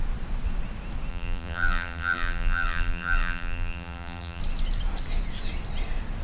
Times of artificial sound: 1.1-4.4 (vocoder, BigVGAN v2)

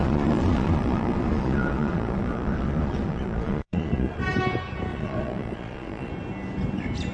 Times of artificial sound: 0.0-4.2 (vocoder, Vocos); 4.9-6.1

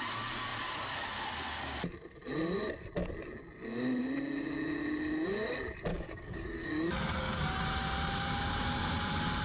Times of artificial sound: 5.9-7.6 (codec, DAC)